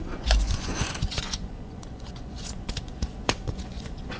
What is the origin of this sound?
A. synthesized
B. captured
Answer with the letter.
A